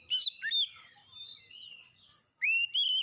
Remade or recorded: recorded